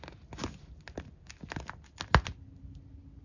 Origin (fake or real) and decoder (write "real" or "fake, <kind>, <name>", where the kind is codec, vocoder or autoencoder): real